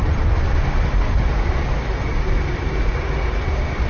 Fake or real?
real